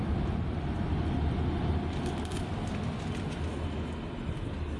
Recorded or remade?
recorded